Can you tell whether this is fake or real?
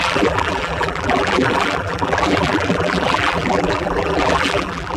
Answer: fake